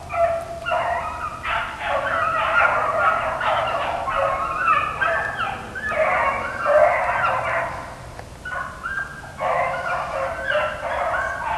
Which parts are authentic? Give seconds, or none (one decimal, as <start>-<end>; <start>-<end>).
0.0-9.1; 9.8-11.6